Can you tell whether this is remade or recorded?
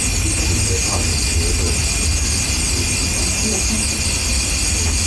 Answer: recorded